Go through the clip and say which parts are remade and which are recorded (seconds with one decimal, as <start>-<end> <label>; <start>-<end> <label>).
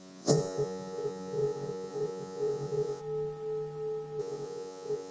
0.0-3.0 remade; 3.0-4.2 recorded; 4.2-5.1 remade